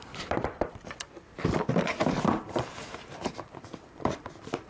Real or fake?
fake